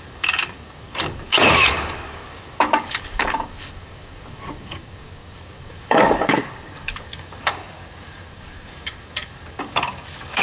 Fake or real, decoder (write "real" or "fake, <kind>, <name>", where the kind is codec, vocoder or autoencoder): fake, codec, DAC